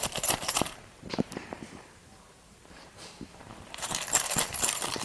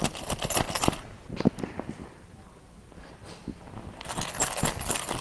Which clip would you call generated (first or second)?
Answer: first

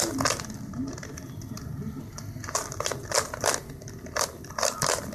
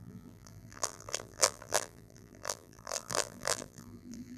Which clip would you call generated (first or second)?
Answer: second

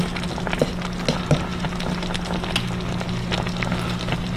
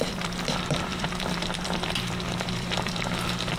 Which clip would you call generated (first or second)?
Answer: second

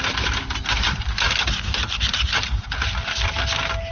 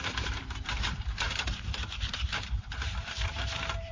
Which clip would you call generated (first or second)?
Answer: second